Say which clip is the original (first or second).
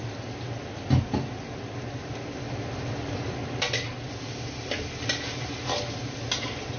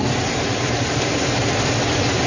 first